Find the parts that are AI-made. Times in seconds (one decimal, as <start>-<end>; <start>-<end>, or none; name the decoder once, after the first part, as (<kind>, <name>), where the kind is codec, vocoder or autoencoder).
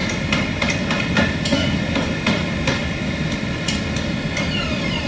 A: 0.0-1.9 (vocoder, BigVGAN v2); 2.4-5.1